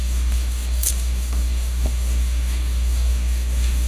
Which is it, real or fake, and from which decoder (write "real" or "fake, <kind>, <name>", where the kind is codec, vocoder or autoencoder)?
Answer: fake, codec, DAC